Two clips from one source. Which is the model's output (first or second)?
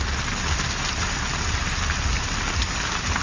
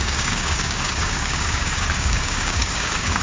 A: second